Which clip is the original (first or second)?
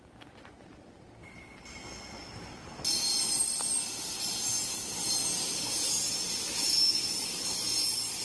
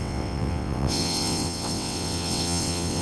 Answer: first